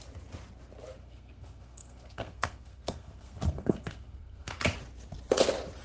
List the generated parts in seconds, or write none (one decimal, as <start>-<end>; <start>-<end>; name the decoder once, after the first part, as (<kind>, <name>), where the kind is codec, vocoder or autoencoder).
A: 1.0-4.5 (codec, SNAC)